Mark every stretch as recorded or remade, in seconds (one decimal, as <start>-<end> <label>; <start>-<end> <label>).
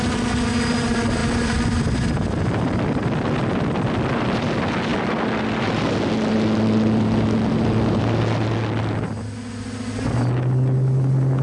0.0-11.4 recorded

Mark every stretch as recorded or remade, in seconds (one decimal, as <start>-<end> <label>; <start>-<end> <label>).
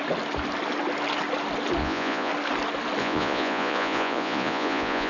0.0-1.8 recorded; 1.8-2.3 remade; 2.3-3.0 recorded; 3.0-5.1 remade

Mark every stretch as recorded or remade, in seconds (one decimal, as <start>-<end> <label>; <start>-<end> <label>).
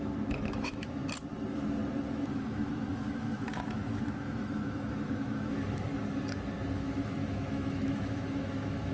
0.0-1.0 remade; 1.0-2.1 recorded; 2.1-5.9 remade; 5.9-6.7 recorded; 6.7-8.9 remade